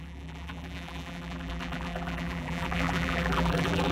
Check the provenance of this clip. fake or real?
fake